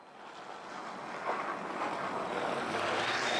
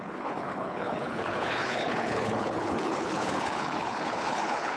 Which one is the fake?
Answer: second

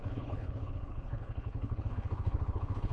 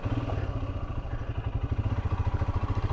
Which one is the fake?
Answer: first